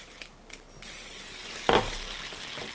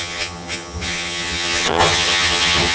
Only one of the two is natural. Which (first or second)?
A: first